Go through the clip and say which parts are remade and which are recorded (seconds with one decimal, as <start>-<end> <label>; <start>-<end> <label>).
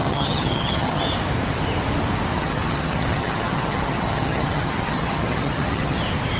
0.0-1.0 remade; 1.0-2.3 recorded; 2.3-6.0 remade; 6.0-6.4 recorded